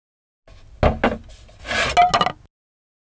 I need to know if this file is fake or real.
real